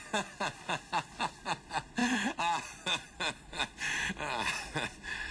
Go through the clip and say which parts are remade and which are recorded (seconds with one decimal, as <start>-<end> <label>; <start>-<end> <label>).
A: 0.0-5.3 recorded